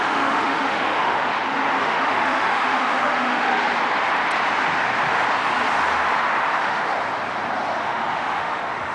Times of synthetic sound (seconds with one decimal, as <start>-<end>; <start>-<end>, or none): 0.0-1.3; 1.8-3.5; 6.5-6.9; 7.8-8.9